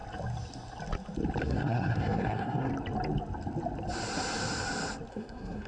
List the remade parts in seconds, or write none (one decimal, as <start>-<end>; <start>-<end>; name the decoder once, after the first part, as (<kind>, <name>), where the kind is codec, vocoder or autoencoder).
1.4-2.7 (codec, SNAC); 5.1-5.7